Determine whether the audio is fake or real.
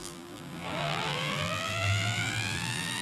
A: fake